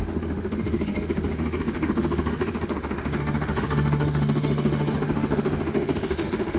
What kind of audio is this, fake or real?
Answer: fake